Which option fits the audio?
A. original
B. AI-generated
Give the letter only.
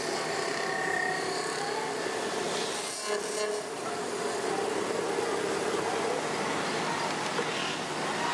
A